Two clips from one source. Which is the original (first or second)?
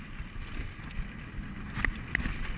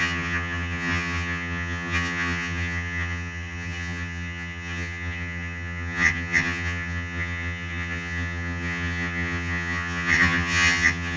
first